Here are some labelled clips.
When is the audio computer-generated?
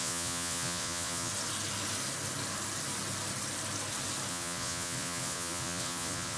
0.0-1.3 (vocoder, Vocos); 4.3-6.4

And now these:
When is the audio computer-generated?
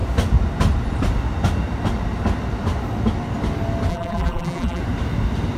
3.9-4.8 (vocoder, BigVGAN v2)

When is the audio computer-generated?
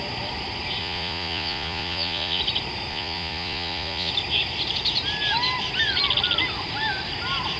0.8-2.4 (vocoder, Vocos); 2.9-4.1